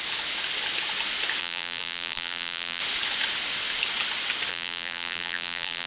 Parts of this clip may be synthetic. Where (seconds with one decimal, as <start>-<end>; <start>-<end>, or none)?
1.4-2.8; 4.5-5.9

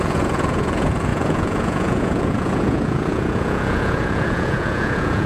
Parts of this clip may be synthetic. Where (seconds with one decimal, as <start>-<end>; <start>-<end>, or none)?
0.0-5.3

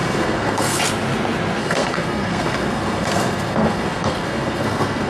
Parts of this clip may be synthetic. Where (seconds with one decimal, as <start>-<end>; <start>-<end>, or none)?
0.0-0.8; 1.6-5.1

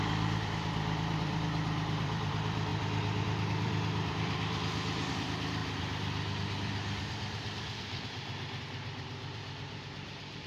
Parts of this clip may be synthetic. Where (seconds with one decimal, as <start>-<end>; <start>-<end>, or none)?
0.0-10.5

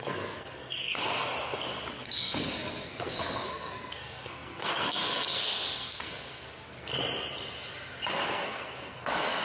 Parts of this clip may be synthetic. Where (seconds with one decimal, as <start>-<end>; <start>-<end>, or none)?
0.0-1.3; 1.9-6.9; 8.1-9.4